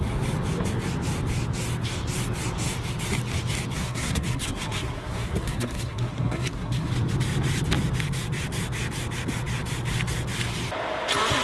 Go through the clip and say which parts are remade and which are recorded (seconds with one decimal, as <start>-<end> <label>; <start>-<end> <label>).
0.0-3.8 recorded; 3.8-6.9 remade; 6.9-11.4 recorded